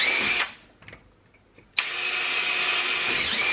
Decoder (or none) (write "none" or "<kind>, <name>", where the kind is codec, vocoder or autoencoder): none